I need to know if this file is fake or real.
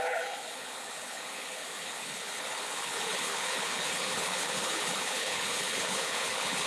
fake